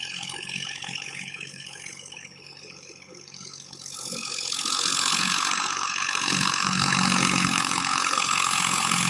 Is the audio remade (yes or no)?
yes